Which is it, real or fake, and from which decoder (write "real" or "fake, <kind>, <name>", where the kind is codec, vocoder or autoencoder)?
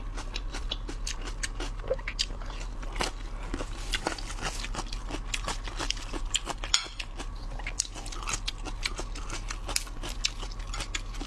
real